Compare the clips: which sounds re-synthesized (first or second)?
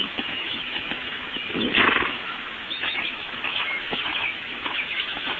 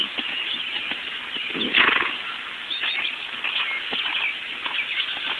first